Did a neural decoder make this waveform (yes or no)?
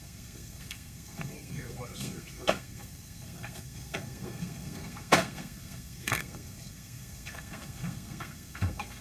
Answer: yes